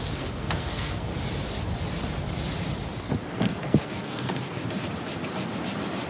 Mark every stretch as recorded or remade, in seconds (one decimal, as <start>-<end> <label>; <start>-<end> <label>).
0.0-1.1 remade; 1.1-3.3 recorded; 3.3-4.6 remade; 4.6-6.1 recorded